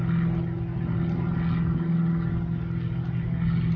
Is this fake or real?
real